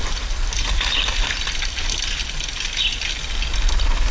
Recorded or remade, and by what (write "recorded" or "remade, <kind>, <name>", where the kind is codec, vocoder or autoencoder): recorded